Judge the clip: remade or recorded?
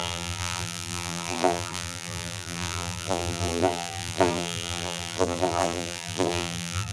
remade